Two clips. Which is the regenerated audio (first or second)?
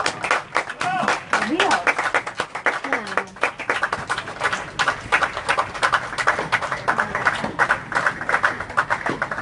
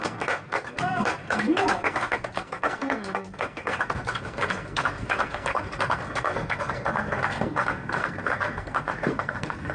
second